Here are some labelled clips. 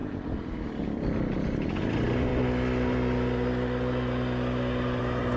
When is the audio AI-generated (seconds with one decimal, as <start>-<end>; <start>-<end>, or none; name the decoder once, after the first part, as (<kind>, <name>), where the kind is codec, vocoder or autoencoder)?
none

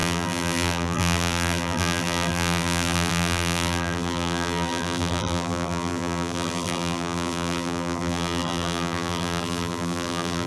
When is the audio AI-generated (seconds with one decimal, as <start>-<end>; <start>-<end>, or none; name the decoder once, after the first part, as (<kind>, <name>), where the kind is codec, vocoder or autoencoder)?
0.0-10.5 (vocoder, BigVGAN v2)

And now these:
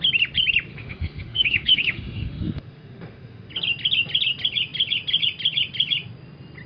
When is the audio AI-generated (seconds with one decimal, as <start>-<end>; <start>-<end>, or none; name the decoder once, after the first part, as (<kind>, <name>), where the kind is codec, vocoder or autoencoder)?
0.7-3.5 (autoencoder, DAC-VAE)

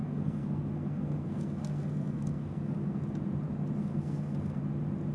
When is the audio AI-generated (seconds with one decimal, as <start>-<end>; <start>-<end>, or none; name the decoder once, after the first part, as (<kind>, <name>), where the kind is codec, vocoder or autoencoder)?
0.0-3.0 (codec, SNAC); 3.8-4.6

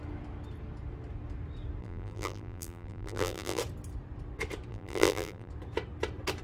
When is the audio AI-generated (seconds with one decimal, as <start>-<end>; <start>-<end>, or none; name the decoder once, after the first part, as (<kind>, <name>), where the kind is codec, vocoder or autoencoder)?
1.8-3.6 (vocoder, BigVGAN v2); 4.7-5.5

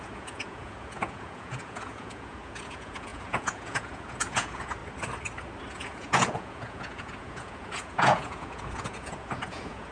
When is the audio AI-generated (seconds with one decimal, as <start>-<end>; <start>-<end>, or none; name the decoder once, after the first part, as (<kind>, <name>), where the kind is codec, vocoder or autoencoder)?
0.0-4.8 (vocoder, Vocos); 5.7-9.9